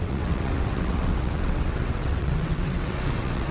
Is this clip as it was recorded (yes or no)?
no